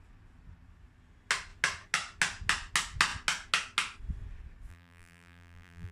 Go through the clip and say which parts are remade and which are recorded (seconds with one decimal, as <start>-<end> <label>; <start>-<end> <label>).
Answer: 0.0-4.7 recorded; 4.7-5.9 remade